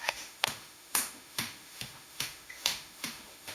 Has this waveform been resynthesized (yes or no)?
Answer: yes